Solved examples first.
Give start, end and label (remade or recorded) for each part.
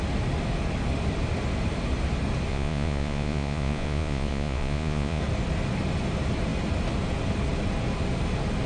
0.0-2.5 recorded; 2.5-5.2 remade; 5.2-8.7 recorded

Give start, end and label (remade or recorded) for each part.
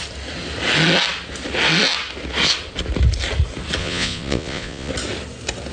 0.0-3.8 recorded; 3.8-4.9 remade; 4.9-5.7 recorded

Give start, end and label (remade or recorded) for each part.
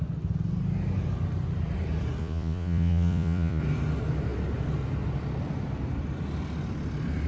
0.0-2.2 recorded; 2.2-3.6 remade; 3.6-7.3 recorded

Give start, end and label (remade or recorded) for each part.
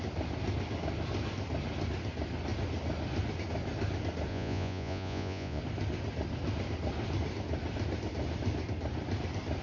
0.0-4.3 recorded; 4.3-5.6 remade; 5.6-9.6 recorded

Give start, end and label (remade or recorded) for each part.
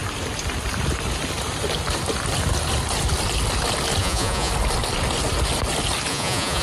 0.0-4.0 recorded; 4.0-4.5 remade; 4.5-6.1 recorded; 6.1-6.6 remade